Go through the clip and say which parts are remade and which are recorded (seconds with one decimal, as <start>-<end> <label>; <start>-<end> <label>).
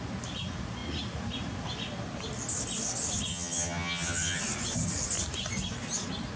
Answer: 0.0-3.3 recorded; 3.3-4.4 remade; 4.4-6.4 recorded